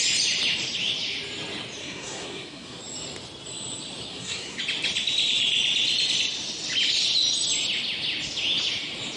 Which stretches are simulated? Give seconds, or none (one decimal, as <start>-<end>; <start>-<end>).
1.8-2.8; 4.1-4.6